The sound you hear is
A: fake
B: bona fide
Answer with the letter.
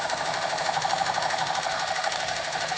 A